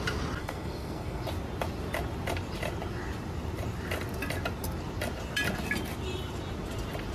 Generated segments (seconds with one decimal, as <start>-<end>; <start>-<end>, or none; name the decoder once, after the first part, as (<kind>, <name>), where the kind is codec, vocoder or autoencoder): 0.4-1.2 (codec, SNAC)